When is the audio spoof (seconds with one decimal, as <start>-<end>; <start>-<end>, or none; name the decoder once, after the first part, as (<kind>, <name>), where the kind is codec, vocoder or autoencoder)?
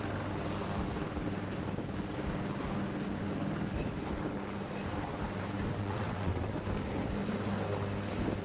5.8-6.5 (vocoder, WaveNeXt)